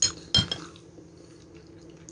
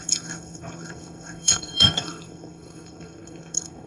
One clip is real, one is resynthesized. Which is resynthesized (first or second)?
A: second